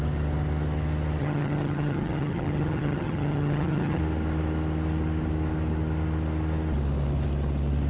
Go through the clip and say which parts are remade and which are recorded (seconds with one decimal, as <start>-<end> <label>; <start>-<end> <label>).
0.0-1.2 recorded; 1.2-4.0 remade; 4.0-7.9 recorded